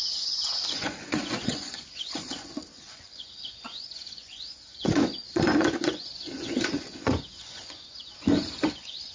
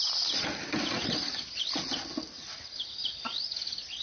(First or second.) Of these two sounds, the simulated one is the first